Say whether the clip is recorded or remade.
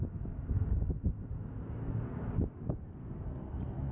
recorded